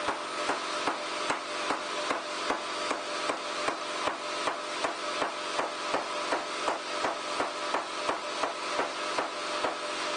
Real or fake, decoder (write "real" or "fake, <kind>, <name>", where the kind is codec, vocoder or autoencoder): real